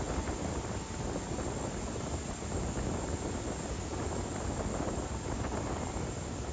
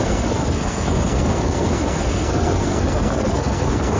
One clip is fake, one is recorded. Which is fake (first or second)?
second